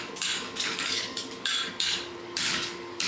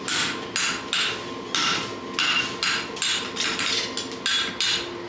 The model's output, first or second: first